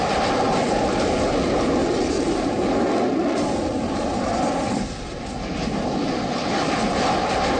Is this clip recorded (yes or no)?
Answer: no